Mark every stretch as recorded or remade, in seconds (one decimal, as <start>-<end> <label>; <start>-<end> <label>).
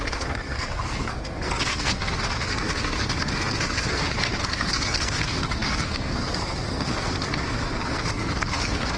0.0-9.0 remade